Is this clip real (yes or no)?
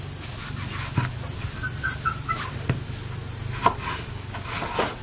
yes